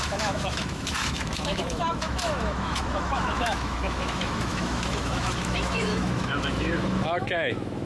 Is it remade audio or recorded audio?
remade